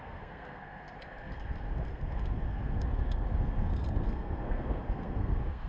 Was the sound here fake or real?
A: fake